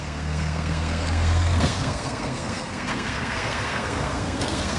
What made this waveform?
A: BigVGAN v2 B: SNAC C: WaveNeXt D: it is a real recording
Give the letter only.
B